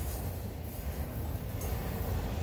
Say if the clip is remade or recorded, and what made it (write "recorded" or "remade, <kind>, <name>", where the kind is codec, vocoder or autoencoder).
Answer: recorded